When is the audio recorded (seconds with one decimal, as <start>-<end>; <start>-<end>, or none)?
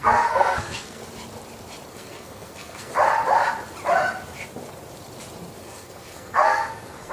1.0-1.9; 2.9-5.6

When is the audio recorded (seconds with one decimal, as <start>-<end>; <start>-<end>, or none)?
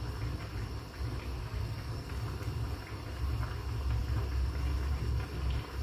0.0-1.4; 2.1-5.8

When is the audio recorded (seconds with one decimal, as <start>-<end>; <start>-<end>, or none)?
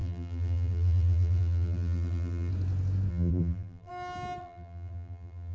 2.5-3.1; 3.9-4.4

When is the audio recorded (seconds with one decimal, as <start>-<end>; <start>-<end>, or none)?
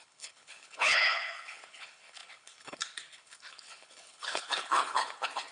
none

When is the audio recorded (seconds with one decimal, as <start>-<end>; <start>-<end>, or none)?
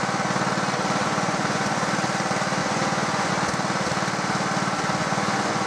0.0-1.0; 1.9-2.6; 3.3-5.0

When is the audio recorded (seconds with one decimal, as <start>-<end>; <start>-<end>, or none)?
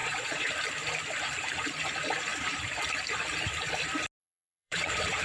0.5-4.2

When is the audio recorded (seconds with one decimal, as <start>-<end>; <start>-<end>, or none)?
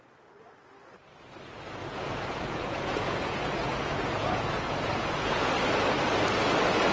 0.0-1.9; 5.5-6.9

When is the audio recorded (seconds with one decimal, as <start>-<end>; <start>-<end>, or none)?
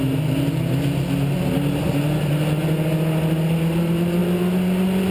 0.0-5.1